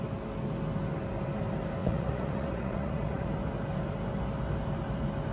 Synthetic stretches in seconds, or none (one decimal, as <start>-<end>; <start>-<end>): 1.8-3.3